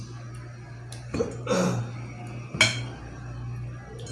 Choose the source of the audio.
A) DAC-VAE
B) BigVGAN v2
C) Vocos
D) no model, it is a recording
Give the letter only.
D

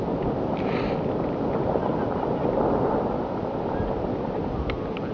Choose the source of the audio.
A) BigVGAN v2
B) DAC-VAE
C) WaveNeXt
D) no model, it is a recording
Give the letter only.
D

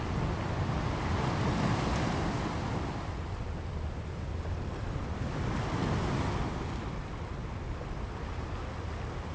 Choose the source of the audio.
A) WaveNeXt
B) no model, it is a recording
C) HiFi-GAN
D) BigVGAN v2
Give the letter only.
B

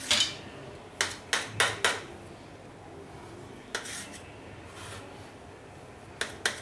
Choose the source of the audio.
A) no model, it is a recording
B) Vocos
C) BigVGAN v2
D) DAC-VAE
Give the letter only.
A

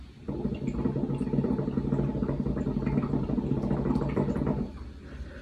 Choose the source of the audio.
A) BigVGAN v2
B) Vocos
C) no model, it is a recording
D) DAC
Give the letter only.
C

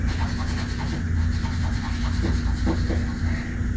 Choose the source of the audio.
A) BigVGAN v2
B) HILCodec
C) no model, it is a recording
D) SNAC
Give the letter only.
C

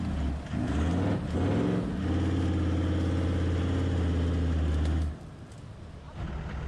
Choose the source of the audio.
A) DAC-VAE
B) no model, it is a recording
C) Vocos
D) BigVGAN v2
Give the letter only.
B